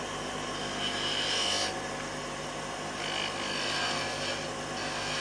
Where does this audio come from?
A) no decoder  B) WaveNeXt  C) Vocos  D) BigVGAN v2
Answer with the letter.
A